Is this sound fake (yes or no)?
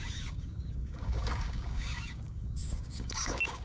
yes